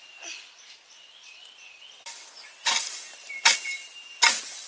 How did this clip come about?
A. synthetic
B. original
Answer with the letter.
B